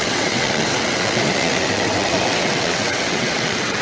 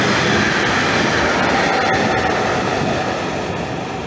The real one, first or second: second